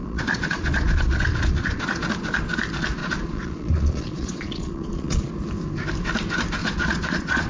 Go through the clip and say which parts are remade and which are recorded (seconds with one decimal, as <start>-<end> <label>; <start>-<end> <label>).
0.0-2.1 remade; 2.1-3.0 recorded; 3.0-5.3 remade; 5.3-6.6 recorded; 6.6-7.5 remade